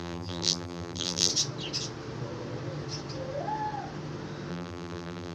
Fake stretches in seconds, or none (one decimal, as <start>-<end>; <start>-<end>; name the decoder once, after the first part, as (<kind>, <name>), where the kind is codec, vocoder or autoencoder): 0.0-1.3 (vocoder, BigVGAN v2); 4.5-5.3